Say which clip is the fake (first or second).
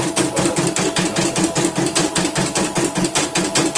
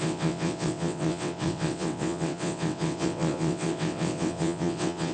second